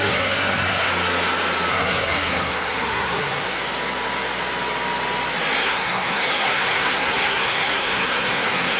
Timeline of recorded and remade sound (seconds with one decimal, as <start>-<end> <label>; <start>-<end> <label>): 0.0-0.9 remade; 0.9-1.7 recorded; 1.7-3.6 remade; 3.6-5.6 recorded; 5.6-8.8 remade